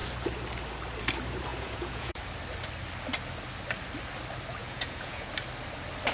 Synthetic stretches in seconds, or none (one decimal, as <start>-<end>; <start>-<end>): 1.5-2.2; 4.6-5.3